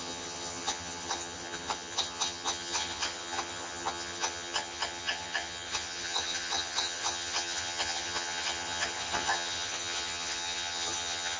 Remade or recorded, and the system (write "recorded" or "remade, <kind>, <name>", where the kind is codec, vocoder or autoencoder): remade, vocoder, HiFi-GAN